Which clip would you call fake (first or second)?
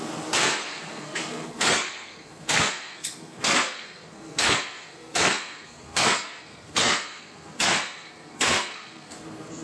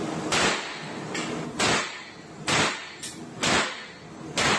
first